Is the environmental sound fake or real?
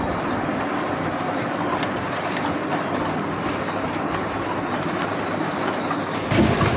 real